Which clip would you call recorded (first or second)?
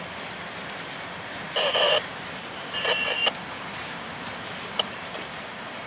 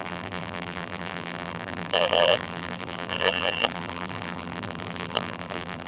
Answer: first